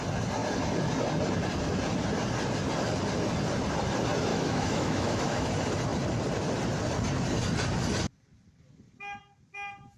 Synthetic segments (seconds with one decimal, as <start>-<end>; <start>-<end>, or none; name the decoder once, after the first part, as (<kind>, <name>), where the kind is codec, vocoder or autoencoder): 4.3-5.5 (autoencoder, DAC-VAE)